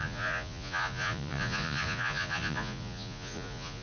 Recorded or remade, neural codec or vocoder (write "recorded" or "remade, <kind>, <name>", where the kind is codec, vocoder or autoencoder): remade, vocoder, Vocos